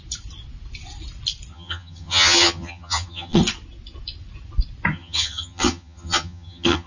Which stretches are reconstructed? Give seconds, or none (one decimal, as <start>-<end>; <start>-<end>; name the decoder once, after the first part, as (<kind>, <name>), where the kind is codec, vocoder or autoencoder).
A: 1.5-3.4 (vocoder, HiFi-GAN); 4.9-6.9